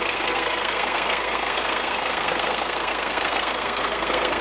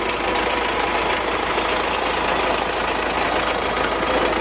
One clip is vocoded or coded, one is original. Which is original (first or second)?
second